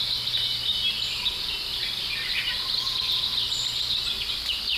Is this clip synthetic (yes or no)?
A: no